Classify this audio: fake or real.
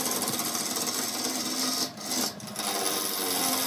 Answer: real